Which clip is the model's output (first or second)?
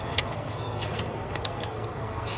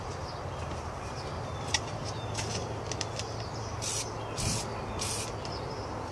first